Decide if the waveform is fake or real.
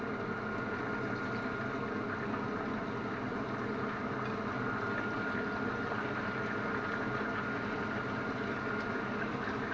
real